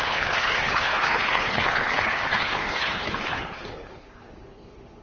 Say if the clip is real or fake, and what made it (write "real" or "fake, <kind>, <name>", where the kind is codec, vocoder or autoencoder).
fake, codec, HILCodec